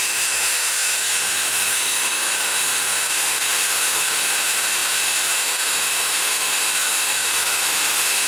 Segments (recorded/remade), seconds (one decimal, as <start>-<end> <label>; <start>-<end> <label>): 0.0-8.3 remade

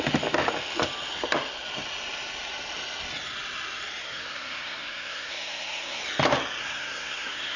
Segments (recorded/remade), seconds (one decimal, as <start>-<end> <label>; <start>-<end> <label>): 0.0-4.0 recorded; 4.0-6.0 remade; 6.0-6.6 recorded; 6.6-7.6 remade